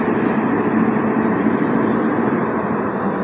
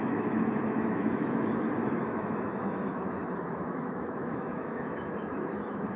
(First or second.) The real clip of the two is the first